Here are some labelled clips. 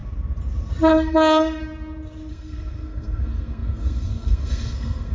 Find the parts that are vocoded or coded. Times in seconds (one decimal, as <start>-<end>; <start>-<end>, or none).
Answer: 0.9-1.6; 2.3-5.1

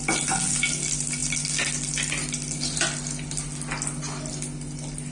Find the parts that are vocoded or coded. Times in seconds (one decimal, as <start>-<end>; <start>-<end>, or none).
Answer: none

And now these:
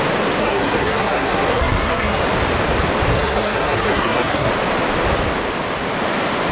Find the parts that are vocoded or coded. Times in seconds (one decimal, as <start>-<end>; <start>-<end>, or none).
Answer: 0.4-2.2; 3.1-4.5